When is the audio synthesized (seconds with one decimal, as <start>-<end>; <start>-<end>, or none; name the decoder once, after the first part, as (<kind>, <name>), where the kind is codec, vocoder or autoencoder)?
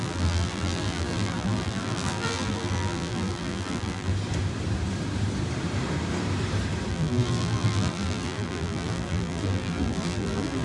0.0-4.1 (vocoder, BigVGAN v2); 6.9-10.6